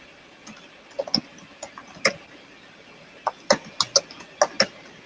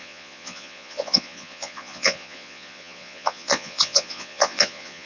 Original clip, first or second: first